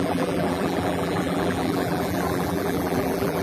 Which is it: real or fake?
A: fake